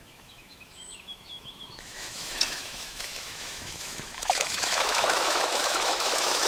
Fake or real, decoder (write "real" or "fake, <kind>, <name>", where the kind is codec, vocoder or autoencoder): fake, autoencoder, DAC-VAE